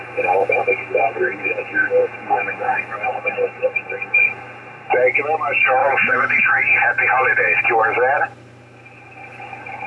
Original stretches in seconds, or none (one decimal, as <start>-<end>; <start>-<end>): 0.0-1.3; 2.8-5.8; 7.6-9.9